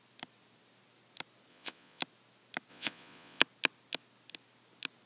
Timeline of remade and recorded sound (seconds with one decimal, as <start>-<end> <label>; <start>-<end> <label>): 0.0-1.5 recorded; 1.5-2.0 remade; 2.0-2.7 recorded; 2.7-3.4 remade; 3.4-5.1 recorded